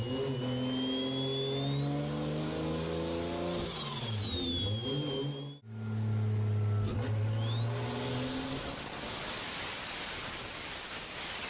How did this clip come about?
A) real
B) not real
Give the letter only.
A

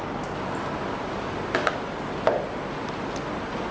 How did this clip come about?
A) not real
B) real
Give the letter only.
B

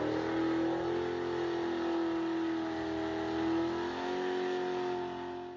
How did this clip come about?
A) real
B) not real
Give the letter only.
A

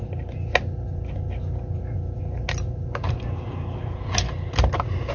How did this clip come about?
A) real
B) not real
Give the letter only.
A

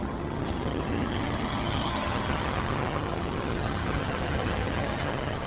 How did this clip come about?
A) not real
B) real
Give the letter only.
A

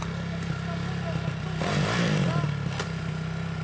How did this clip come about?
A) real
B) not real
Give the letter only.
A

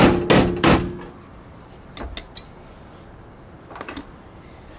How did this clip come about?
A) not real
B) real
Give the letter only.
B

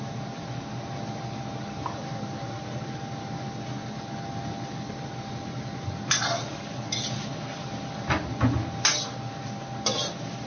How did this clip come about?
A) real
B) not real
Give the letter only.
A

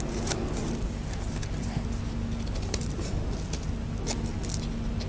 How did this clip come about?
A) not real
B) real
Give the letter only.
B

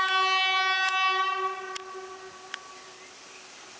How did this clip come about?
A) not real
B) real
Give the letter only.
B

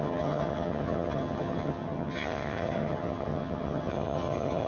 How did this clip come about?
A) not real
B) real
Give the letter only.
A